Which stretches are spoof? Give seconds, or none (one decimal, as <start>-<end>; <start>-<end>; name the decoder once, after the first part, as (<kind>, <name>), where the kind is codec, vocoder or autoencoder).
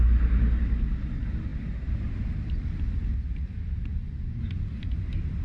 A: none